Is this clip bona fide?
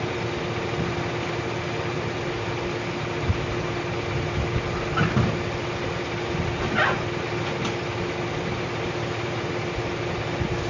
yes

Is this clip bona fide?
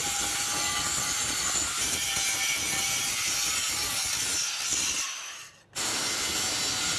yes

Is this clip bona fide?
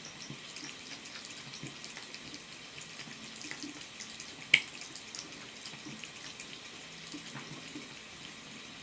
yes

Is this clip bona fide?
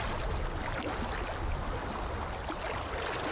yes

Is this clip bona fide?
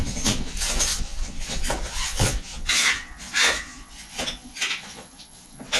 no